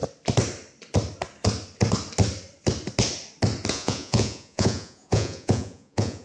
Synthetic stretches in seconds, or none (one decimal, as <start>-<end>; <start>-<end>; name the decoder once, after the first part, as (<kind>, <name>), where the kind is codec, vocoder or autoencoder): 3.7-6.2 (vocoder, Vocos)